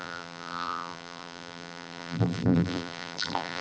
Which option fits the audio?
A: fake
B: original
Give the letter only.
A